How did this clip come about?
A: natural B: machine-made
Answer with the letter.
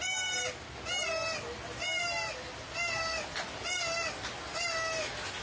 A